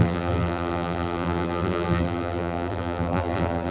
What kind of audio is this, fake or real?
fake